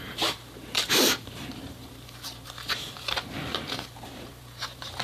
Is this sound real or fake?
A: fake